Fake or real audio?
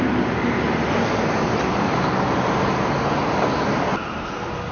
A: real